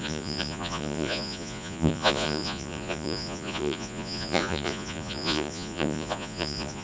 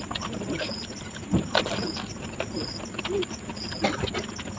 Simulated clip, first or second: first